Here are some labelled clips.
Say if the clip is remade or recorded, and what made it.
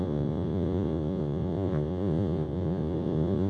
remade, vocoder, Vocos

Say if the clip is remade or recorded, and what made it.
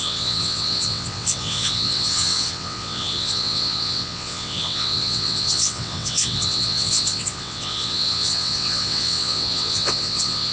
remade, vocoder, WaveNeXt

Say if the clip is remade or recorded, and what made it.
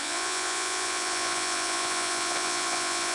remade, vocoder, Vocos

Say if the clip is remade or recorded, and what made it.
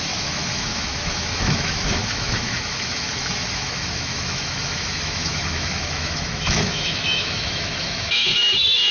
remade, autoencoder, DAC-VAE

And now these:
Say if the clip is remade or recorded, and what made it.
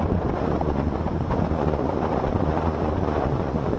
remade, vocoder, Vocos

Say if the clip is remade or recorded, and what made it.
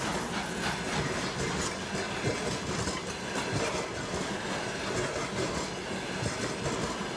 recorded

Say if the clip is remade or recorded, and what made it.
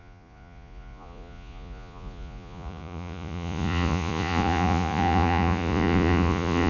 remade, vocoder, Vocos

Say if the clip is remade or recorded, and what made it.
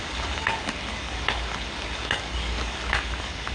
remade, codec, DAC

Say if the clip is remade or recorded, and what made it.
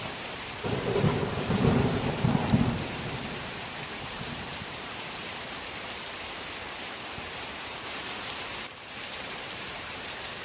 remade, vocoder, BigVGAN v2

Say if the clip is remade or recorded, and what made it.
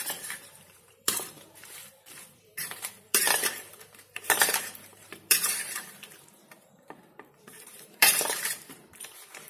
remade, vocoder, BigVGAN v2